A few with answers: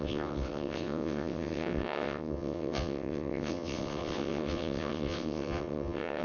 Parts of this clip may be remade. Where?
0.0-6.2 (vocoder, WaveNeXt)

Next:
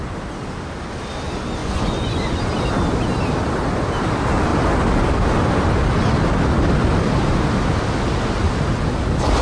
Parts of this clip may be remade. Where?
1.6-2.4 (vocoder, Vocos)

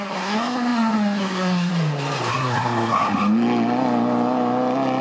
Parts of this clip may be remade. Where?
0.0-1.7 (codec, SNAC); 2.3-3.1

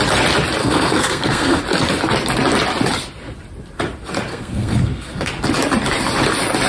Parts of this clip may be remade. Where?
0.6-1.6 (codec, SNAC); 4.3-5.3

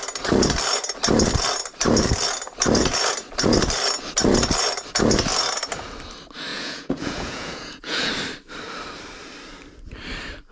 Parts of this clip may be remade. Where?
6.5-8.1 (vocoder, Vocos)

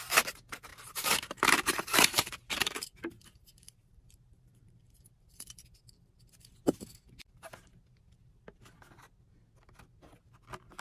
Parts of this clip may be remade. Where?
0.7-5.1 (vocoder, BigVGAN v2)

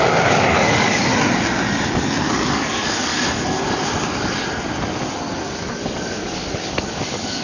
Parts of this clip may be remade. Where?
0.0-1.1 (codec, DAC); 2.3-3.1; 5.6-7.4